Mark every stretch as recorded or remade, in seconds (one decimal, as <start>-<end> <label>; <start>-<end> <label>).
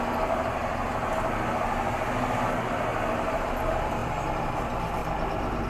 0.0-0.6 remade; 0.6-3.3 recorded; 3.3-4.0 remade; 4.0-4.6 recorded; 4.6-5.0 remade; 5.0-5.7 recorded